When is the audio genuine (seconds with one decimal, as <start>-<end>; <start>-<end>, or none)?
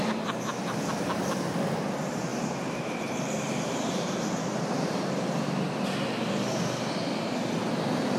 0.0-8.2